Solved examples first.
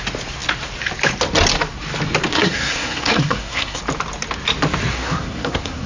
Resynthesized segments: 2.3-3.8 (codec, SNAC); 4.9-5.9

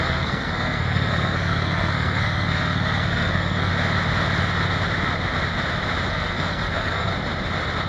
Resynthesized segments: 0.0-3.7 (codec, SNAC); 6.1-7.1

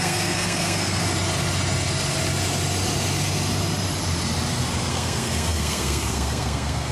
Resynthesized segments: 0.0-1.0 (codec, SNAC); 4.9-6.9

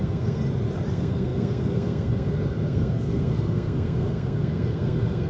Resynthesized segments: 0.0-0.4 (codec, SNAC); 0.9-5.3

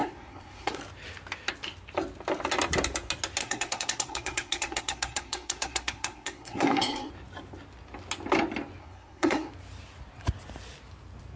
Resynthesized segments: 0.0-0.8 (codec, SNAC); 3.4-7.1; 8.8-9.5